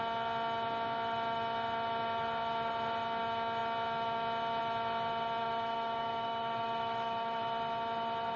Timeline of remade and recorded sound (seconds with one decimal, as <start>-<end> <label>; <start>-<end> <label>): 0.0-5.4 recorded; 5.4-7.4 remade; 7.4-8.4 recorded